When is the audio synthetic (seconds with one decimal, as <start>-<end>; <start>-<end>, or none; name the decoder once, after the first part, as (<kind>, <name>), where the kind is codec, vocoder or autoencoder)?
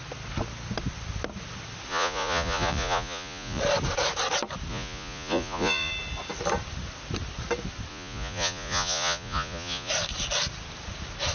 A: 1.9-3.6 (vocoder, Vocos); 4.7-5.9; 7.9-9.9